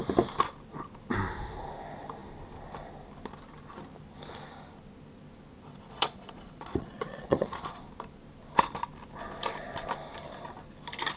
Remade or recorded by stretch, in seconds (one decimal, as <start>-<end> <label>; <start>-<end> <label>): 0.0-5.7 recorded; 5.7-7.8 remade; 7.8-11.2 recorded